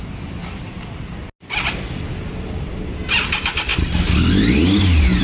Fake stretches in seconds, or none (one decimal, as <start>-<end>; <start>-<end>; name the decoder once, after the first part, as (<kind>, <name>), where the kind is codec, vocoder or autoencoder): none